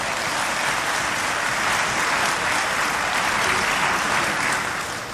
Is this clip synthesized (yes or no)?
no